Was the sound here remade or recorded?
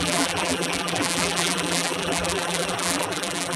remade